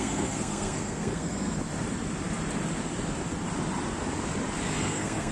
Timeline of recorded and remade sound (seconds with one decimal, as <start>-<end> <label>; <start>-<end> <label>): 0.0-1.6 remade; 1.6-4.8 recorded; 4.8-5.3 remade